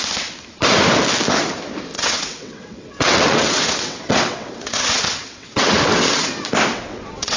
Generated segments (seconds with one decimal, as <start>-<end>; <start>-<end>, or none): 1.9-6.3; 6.7-7.4